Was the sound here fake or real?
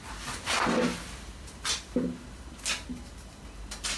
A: real